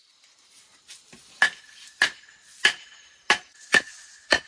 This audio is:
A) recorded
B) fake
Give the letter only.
A